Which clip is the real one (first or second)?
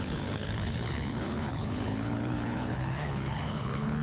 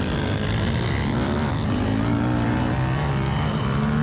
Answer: second